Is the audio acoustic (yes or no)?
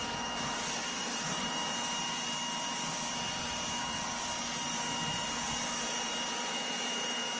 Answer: yes